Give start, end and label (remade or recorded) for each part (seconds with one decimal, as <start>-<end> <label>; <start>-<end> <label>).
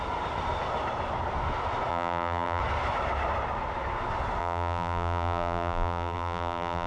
0.0-1.9 recorded; 1.9-2.6 remade; 2.6-4.4 recorded; 4.4-6.9 remade